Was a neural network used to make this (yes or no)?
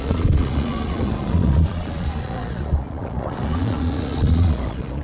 yes